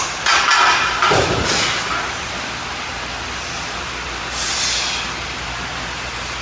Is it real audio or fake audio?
real